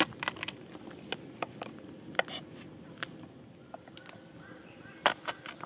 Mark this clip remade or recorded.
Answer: recorded